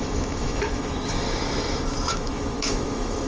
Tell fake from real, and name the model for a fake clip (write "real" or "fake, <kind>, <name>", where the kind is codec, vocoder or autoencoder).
fake, autoencoder, DAC-VAE